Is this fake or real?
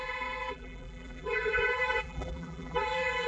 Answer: fake